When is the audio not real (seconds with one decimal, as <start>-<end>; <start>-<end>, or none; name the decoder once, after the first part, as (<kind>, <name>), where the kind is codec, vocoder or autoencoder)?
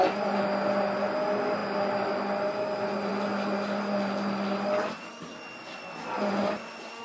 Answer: none